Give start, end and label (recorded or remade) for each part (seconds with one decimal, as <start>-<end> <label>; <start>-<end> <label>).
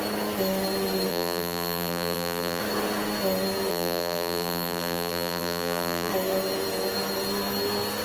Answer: 0.0-1.1 recorded; 1.1-2.6 remade; 2.6-3.7 recorded; 3.7-6.1 remade; 6.1-8.0 recorded